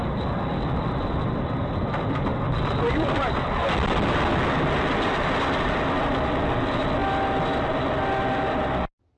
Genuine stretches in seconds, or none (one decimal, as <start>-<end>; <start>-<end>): 0.0-9.2